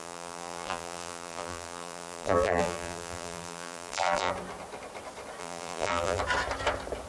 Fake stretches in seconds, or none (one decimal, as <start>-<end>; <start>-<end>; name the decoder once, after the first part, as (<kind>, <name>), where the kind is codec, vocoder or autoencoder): 0.0-4.3 (vocoder, BigVGAN v2); 5.4-6.2